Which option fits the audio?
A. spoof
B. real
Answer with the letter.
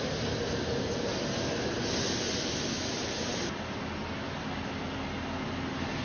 B